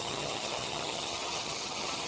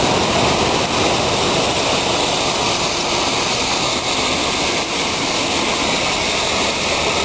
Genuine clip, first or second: second